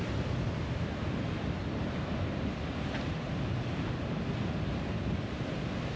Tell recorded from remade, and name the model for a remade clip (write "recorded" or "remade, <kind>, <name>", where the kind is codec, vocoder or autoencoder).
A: recorded